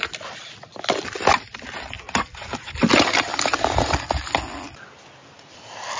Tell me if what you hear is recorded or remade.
recorded